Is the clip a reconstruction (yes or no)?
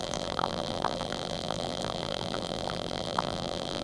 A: yes